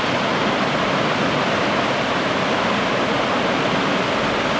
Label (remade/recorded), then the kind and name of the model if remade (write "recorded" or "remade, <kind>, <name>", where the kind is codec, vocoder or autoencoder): recorded